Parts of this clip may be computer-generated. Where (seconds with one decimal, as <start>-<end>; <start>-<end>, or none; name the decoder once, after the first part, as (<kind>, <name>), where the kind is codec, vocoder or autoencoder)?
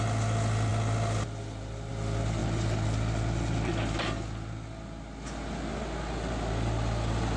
none